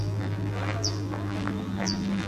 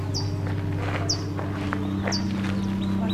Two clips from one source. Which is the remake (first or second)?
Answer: first